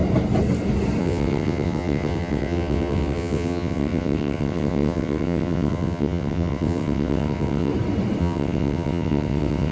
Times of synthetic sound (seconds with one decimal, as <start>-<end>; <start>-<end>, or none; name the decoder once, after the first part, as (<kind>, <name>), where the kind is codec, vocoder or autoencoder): 1.0-7.7 (vocoder, WaveNeXt); 8.2-9.7